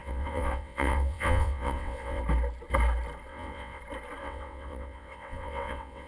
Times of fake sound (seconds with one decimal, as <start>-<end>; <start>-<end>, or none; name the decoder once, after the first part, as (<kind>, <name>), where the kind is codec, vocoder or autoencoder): 0.0-2.2 (vocoder, WaveNeXt); 3.3-3.8; 4.2-6.1